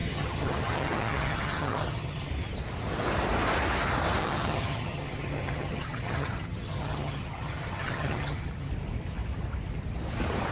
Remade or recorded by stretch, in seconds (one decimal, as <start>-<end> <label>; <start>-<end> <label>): 0.0-2.3 remade; 2.3-4.2 recorded; 4.2-8.7 remade; 8.7-10.5 recorded